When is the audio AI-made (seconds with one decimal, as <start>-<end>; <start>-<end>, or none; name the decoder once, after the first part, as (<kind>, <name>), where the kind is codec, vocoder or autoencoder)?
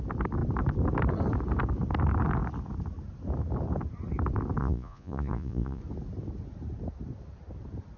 4.6-5.8 (vocoder, Vocos)